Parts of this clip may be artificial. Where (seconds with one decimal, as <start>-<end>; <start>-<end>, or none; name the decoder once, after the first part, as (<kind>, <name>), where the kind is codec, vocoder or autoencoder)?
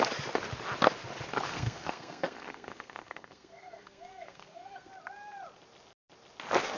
1.5-4.9 (codec, SNAC)